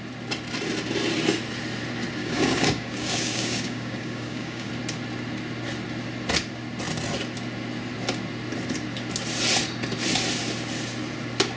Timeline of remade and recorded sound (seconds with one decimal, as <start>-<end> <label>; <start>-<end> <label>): 0.0-2.2 recorded; 2.2-4.7 remade; 4.7-11.6 recorded